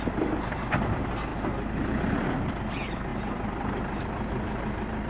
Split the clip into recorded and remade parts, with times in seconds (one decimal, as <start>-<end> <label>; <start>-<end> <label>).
0.0-1.3 remade; 1.3-2.3 recorded; 2.3-5.1 remade